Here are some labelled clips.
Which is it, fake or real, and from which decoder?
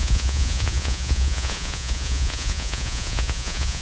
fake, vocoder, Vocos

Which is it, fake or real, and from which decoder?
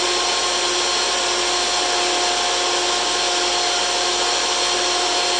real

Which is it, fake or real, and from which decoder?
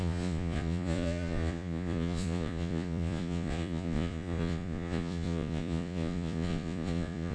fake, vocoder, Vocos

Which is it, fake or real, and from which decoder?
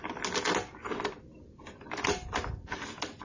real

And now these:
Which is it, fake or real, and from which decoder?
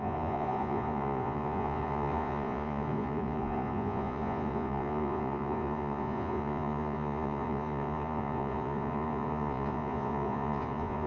fake, vocoder, Vocos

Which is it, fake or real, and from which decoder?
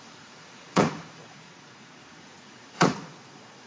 fake, vocoder, Vocos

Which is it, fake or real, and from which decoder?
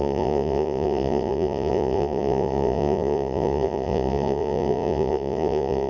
fake, vocoder, Vocos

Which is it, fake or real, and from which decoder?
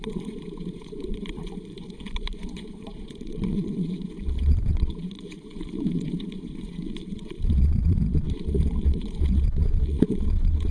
fake, vocoder, Vocos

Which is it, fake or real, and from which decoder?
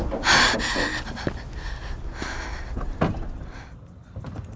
real